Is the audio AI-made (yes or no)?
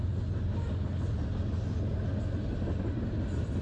no